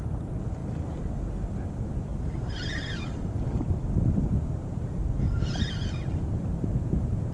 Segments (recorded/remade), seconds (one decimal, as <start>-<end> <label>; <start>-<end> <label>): 0.0-2.1 recorded; 2.1-3.6 remade; 3.6-6.5 recorded; 6.5-7.3 remade